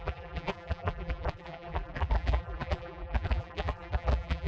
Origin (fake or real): fake